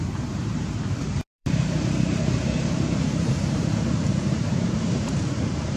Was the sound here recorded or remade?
remade